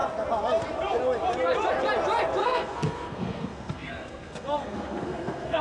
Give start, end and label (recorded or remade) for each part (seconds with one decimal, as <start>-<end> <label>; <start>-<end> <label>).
0.0-2.4 recorded; 2.4-5.6 remade